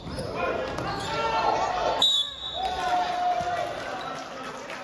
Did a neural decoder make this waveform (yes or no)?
no